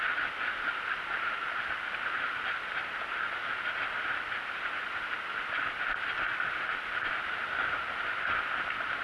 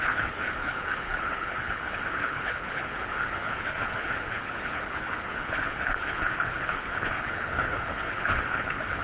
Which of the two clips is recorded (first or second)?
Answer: first